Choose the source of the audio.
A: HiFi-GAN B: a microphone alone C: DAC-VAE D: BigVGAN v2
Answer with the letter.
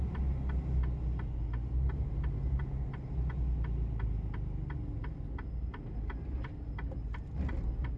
B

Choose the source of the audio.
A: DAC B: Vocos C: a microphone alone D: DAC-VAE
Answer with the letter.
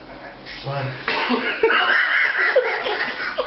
C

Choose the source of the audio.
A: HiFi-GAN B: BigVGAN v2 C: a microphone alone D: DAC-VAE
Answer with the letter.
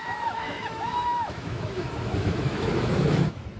D